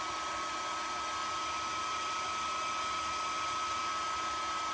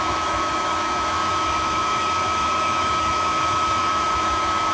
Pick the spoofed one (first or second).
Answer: second